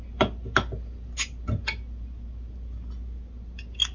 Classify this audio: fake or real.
real